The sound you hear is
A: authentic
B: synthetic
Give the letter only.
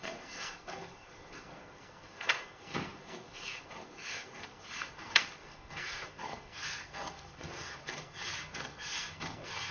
B